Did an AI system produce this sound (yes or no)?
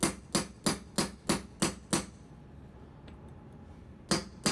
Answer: no